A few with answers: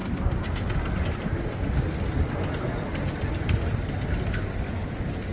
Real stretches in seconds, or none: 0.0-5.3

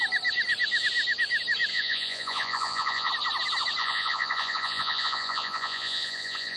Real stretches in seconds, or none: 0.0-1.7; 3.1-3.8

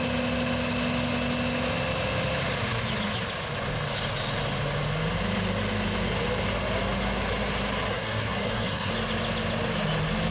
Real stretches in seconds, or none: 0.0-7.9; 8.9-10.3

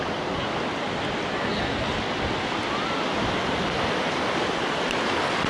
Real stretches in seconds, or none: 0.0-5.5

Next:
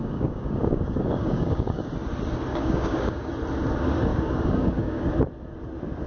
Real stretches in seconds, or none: 1.9-2.5; 3.3-4.1; 5.1-6.1

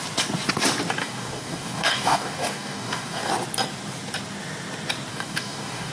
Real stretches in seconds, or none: 0.0-1.0; 3.3-5.1

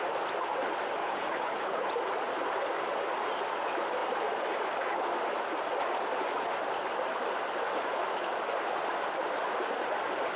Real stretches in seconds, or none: 0.0-1.0; 1.9-10.4